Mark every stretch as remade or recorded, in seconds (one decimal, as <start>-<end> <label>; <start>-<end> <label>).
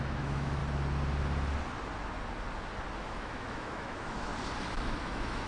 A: 0.0-0.6 remade; 0.6-3.0 recorded; 3.0-4.3 remade; 4.3-5.0 recorded; 5.0-5.5 remade